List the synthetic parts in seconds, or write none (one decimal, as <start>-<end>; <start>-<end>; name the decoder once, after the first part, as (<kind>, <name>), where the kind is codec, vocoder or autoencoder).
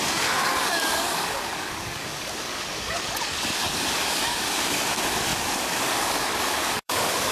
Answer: 0.0-7.3 (codec, DAC)